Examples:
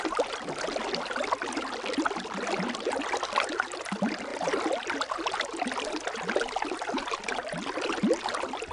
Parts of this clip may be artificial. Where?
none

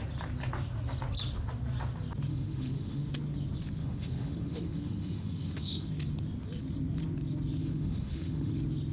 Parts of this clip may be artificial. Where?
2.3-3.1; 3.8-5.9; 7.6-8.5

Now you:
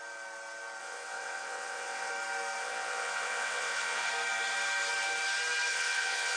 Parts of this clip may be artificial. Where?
0.8-2.1; 2.6-4.1; 5.7-6.4